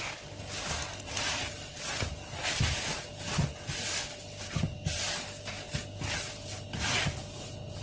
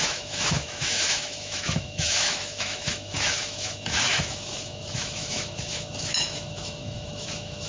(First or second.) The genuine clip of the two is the first